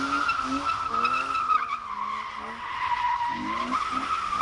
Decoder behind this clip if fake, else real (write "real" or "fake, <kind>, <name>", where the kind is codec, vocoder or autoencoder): real